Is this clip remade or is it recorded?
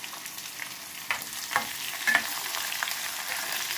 recorded